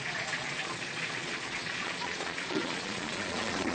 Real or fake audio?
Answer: fake